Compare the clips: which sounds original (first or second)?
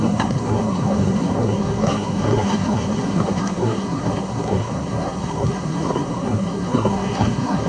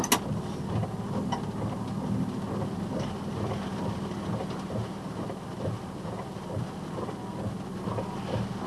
second